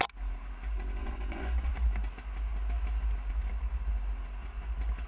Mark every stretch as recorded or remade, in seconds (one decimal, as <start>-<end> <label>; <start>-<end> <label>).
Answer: 0.0-1.0 recorded; 1.0-1.7 remade; 1.7-5.1 recorded